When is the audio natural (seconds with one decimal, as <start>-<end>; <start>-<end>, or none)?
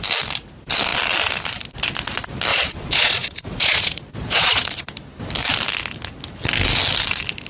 0.0-2.5; 4.8-7.5